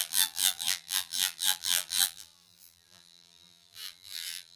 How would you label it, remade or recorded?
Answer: remade